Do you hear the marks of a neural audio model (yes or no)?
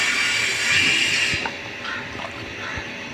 no